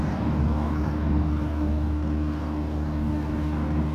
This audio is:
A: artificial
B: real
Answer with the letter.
A